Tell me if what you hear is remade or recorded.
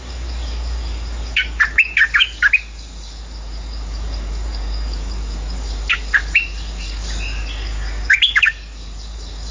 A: remade